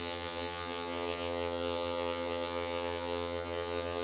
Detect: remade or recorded remade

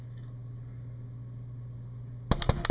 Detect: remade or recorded recorded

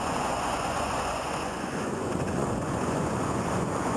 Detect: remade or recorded remade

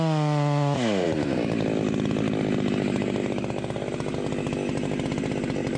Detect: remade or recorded recorded